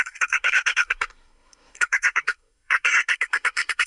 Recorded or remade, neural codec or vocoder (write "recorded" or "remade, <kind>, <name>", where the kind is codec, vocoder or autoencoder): remade, codec, SNAC